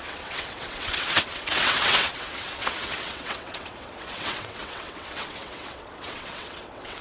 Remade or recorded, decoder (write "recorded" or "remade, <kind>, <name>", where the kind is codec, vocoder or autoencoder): remade, vocoder, WaveNeXt